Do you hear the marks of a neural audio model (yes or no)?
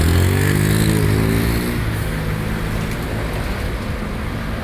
no